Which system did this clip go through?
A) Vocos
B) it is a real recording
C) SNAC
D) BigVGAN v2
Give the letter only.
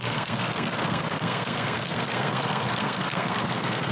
C